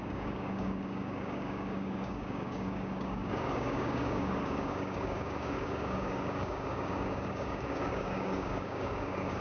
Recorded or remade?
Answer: remade